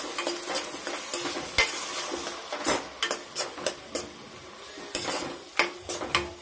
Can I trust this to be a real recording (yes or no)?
yes